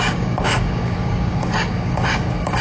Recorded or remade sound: remade